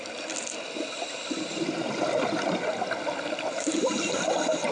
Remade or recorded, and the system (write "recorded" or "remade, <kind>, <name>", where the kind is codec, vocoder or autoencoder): remade, vocoder, BigVGAN v2